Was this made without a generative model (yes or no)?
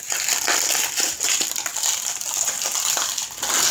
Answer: yes